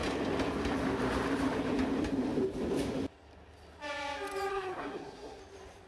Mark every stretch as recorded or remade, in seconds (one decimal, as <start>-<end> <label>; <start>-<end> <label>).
0.0-4.5 recorded; 4.5-5.4 remade; 5.4-5.9 recorded